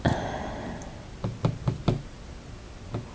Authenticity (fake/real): real